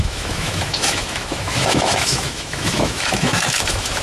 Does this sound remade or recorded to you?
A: remade